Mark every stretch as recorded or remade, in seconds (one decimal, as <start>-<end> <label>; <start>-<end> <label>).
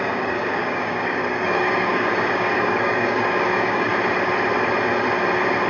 0.0-3.9 remade; 3.9-5.7 recorded